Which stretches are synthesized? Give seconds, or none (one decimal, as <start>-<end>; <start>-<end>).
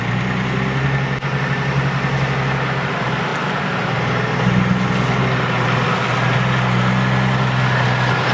none